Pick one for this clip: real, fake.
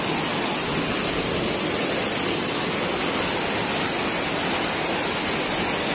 real